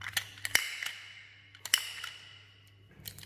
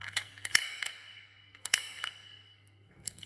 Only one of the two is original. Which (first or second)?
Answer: first